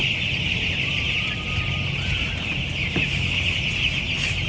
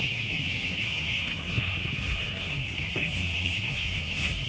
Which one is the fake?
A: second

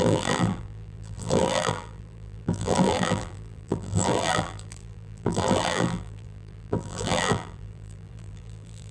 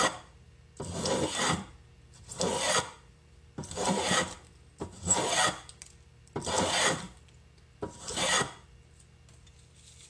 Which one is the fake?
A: first